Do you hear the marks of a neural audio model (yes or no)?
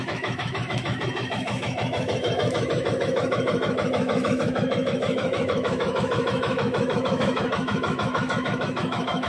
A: yes